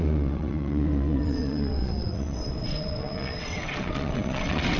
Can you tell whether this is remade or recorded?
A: remade